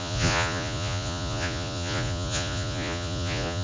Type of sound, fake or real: fake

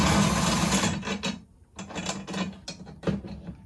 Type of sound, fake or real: real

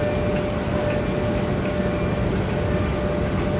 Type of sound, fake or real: real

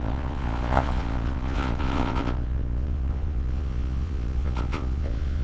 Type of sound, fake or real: fake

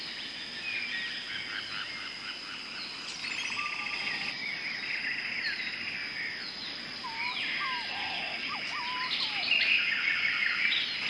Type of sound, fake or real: real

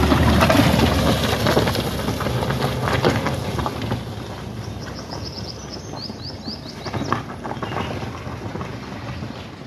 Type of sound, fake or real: real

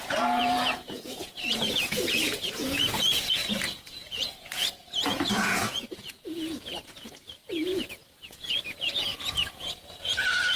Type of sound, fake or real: fake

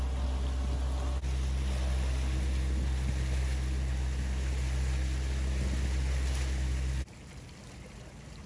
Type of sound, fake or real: real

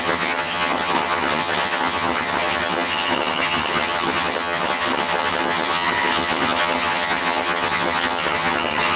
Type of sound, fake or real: fake